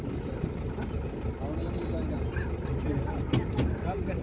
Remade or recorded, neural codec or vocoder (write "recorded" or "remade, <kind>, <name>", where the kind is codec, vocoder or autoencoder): recorded